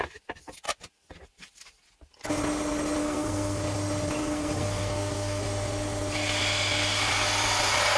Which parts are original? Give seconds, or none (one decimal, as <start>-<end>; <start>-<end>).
0.0-3.0; 3.6-4.2; 5.4-8.0